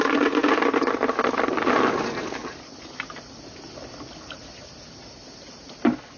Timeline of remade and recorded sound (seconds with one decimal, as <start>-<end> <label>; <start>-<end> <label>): 0.0-6.2 recorded